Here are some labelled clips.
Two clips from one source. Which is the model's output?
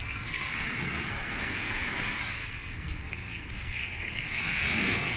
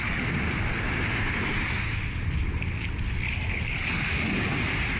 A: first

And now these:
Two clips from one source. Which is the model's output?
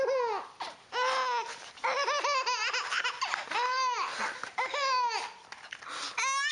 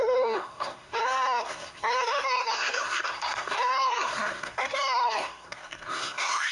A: second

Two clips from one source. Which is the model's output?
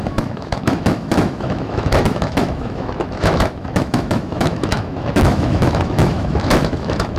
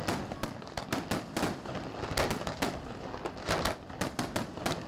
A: first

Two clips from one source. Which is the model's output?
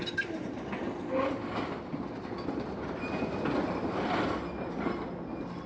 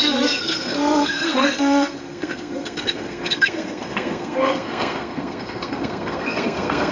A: second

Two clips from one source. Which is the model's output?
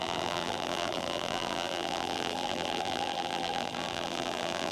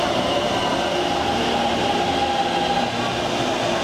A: first